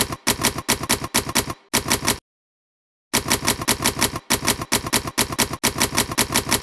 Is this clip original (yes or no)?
yes